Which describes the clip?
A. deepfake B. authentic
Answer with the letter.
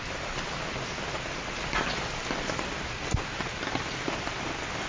B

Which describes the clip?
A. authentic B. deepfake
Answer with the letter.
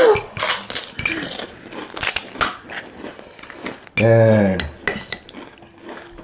A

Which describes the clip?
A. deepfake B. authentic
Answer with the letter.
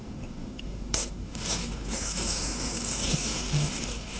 A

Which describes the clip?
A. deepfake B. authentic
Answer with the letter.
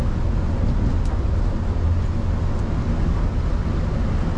B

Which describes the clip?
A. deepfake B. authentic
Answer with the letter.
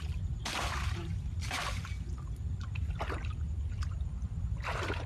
B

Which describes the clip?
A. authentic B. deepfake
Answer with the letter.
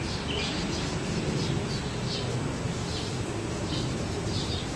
A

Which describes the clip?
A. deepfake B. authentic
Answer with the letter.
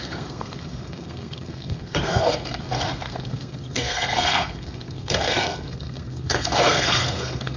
A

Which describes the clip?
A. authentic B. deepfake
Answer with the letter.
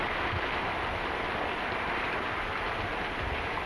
A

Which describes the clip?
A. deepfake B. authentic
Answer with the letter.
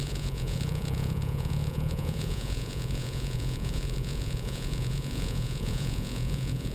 A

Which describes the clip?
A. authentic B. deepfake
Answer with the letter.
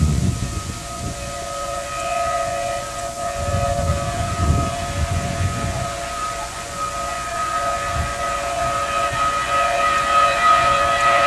B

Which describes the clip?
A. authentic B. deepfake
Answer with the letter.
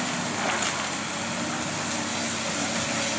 A